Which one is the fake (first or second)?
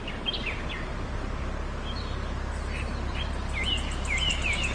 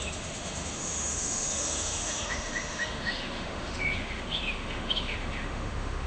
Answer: second